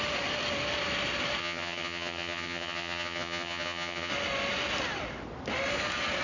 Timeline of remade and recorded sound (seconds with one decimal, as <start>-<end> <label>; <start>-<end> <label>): 0.0-1.4 recorded; 1.4-4.1 remade; 4.1-6.2 recorded